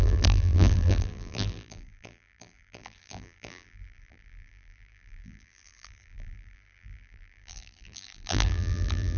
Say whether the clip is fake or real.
fake